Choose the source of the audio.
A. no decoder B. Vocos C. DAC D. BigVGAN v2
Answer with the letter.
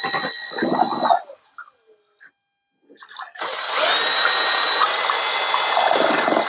A